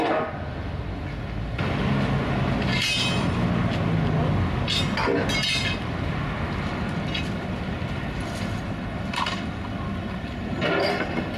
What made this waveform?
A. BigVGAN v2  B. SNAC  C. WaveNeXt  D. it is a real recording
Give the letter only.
D